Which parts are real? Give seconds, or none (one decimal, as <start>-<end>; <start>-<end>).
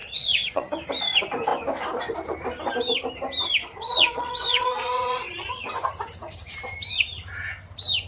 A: 0.7-3.6; 5.5-8.1